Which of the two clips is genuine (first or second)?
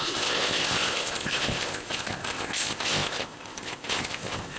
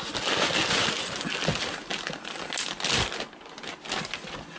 second